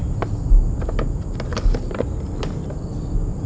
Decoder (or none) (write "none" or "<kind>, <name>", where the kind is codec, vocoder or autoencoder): none